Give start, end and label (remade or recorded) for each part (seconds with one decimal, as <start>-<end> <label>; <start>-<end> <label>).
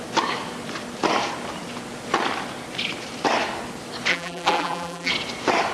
0.0-4.1 recorded; 4.1-5.1 remade; 5.1-5.7 recorded